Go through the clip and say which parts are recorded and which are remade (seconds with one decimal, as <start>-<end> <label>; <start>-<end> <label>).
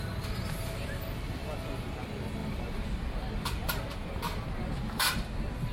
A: 0.0-5.7 recorded